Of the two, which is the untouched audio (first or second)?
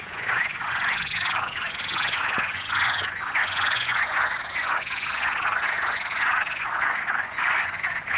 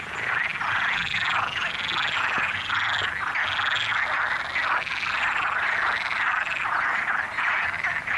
second